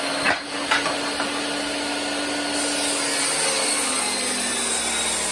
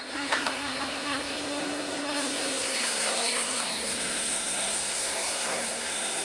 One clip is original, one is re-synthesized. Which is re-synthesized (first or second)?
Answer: second